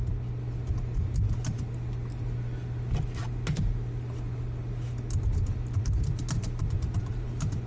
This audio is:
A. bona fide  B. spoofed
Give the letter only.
A